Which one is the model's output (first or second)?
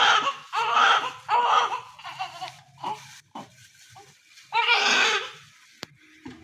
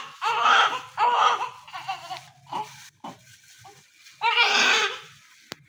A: first